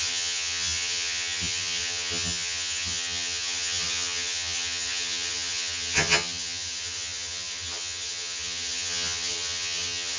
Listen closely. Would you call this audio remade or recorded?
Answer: remade